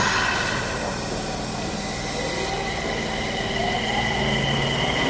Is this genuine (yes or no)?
yes